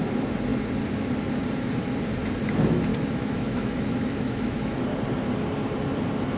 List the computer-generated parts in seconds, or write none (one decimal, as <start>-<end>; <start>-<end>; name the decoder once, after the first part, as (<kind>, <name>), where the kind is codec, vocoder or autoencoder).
2.9-4.8 (autoencoder, DAC-VAE)